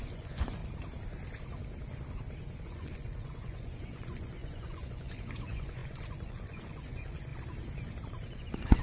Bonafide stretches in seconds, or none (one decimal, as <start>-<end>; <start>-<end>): 0.6-2.6; 7.3-8.1